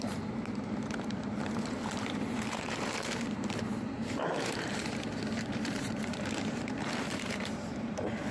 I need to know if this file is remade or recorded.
remade